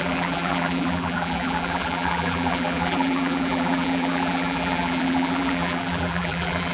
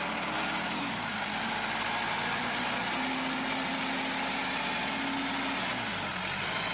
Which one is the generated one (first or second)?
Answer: first